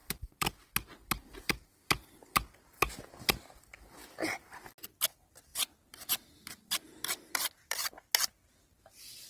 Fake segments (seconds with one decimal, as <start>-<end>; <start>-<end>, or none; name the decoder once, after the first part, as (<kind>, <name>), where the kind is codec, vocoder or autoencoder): 0.0-0.5 (vocoder, BigVGAN v2); 1.2-3.6; 5.5-7.9